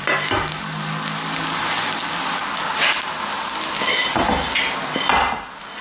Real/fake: real